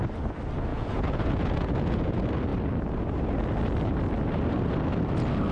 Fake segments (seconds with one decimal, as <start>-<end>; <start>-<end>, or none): 0.7-2.1